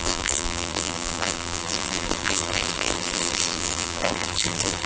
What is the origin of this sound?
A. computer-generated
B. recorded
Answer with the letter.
A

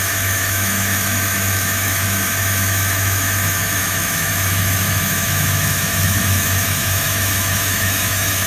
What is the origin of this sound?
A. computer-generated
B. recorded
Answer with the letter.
A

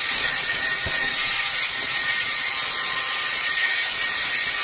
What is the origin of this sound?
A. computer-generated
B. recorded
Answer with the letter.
A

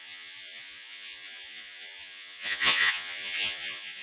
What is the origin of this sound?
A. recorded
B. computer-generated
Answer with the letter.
B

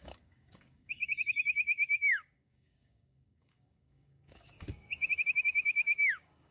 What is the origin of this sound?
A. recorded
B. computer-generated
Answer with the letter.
B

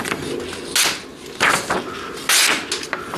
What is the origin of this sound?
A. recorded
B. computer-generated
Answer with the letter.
A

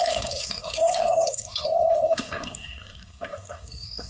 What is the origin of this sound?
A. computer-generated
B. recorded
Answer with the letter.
A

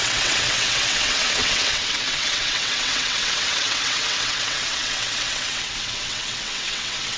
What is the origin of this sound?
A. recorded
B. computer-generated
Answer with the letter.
B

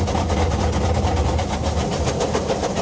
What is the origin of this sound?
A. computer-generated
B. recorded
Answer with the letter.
B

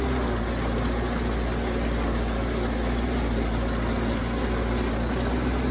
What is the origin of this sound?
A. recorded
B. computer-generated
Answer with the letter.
A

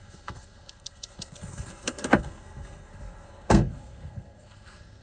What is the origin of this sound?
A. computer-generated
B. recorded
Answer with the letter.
A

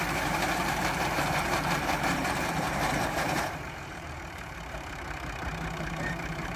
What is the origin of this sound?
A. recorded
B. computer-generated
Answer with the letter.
B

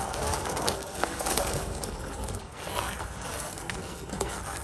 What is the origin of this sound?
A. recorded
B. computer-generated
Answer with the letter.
B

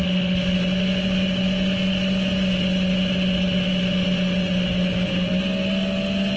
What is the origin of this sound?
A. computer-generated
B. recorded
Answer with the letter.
B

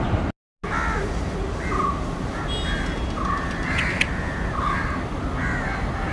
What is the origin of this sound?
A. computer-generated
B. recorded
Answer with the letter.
B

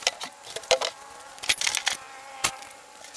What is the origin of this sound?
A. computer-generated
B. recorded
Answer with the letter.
A